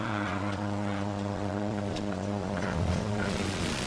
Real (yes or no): no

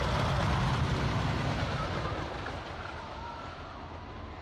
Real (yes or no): yes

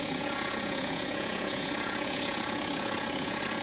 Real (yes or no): no